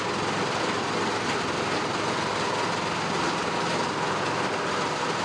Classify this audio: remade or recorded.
recorded